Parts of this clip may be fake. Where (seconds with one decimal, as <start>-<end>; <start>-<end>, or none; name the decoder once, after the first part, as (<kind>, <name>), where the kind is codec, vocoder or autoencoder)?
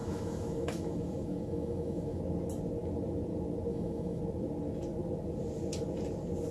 0.0-2.2 (autoencoder, DAC-VAE); 3.7-4.2